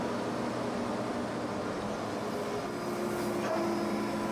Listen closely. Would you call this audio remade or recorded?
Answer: recorded